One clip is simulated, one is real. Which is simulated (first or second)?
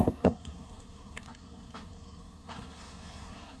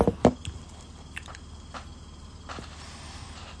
first